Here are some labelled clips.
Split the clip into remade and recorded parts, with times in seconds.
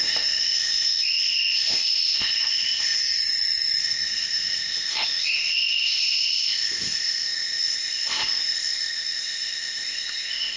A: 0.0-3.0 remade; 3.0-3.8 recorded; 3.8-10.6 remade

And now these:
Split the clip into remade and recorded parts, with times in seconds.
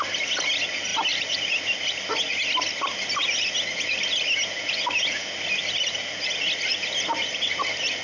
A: 0.0-8.0 recorded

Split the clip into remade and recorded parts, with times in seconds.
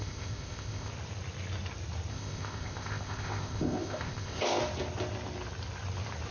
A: 0.0-0.9 remade; 0.9-2.1 recorded; 2.1-4.6 remade; 4.6-6.3 recorded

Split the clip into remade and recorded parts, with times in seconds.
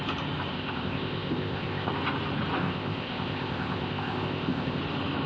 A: 0.0-0.5 recorded; 0.5-1.9 remade; 1.9-2.6 recorded; 2.6-4.8 remade; 4.8-5.3 recorded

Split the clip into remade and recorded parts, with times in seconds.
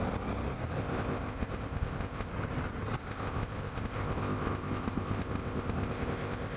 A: 0.0-0.8 recorded; 0.8-2.3 remade; 2.3-3.0 recorded; 3.0-6.6 remade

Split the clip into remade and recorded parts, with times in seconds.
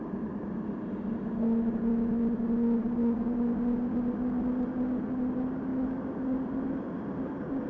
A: 0.0-7.7 recorded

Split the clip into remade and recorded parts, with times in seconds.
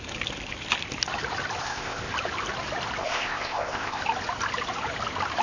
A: 0.0-1.6 recorded; 1.6-2.1 remade; 2.1-3.0 recorded; 3.0-4.0 remade; 4.0-5.4 recorded